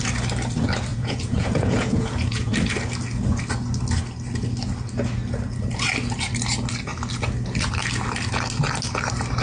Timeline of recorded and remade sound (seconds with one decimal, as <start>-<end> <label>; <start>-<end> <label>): 0.0-0.9 recorded; 0.9-2.5 remade; 2.5-9.4 recorded